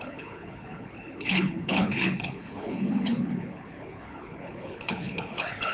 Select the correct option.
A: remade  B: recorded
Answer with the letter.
A